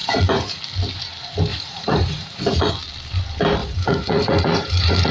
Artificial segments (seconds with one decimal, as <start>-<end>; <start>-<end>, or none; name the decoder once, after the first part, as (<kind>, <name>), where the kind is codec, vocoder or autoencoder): 0.0-0.6 (vocoder, Vocos); 1.5-2.7; 3.6-5.1